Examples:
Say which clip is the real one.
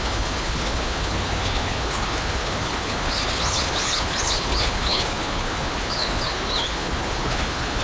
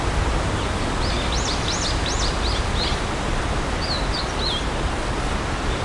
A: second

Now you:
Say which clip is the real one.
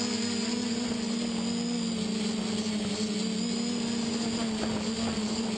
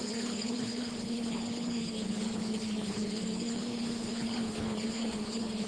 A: first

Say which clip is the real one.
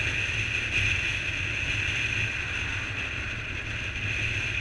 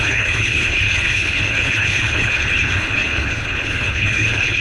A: first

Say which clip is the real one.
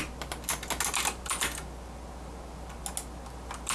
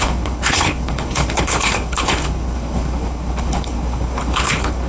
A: first